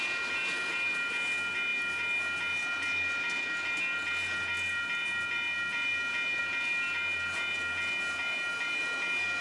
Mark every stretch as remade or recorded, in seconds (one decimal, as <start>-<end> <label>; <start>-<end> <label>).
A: 0.0-9.4 recorded